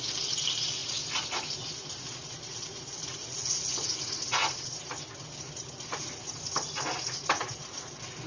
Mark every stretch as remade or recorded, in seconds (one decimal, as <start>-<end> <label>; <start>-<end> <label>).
0.0-0.8 recorded; 0.8-3.0 remade; 3.0-8.3 recorded